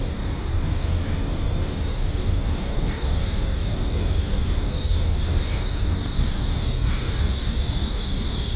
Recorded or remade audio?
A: remade